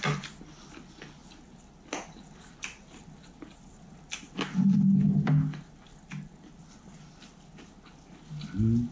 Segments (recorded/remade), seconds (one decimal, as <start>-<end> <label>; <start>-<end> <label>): 0.0-8.9 recorded